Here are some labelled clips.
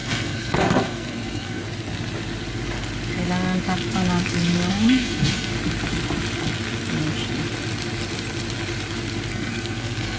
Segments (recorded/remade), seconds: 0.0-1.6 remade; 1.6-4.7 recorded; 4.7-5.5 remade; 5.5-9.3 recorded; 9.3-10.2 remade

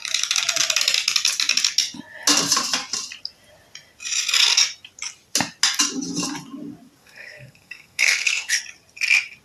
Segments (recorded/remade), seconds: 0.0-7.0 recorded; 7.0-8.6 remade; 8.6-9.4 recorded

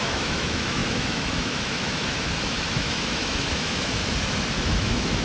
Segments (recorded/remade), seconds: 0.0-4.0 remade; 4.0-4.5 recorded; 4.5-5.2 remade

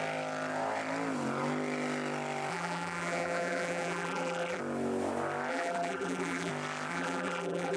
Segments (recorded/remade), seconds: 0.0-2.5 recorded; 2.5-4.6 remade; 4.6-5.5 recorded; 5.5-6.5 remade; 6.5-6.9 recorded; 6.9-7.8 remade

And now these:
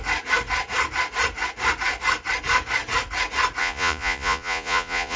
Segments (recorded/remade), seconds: 0.0-3.6 recorded; 3.6-5.2 remade

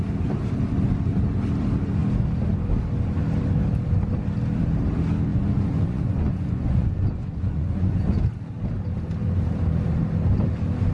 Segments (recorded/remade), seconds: 0.0-5.3 recorded; 5.3-8.2 remade; 8.2-10.9 recorded

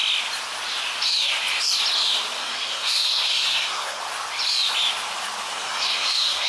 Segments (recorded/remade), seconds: 0.0-2.4 recorded; 2.4-4.0 remade; 4.0-5.5 recorded; 5.5-6.5 remade

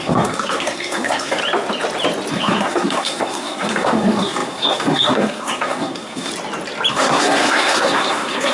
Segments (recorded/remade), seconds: 0.0-1.4 remade; 1.4-2.3 recorded; 2.3-6.3 remade; 6.3-6.9 recorded; 6.9-8.5 remade